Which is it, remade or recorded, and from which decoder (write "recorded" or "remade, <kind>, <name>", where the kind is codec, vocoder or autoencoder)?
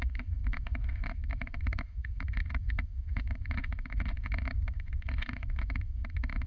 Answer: remade, autoencoder, DAC-VAE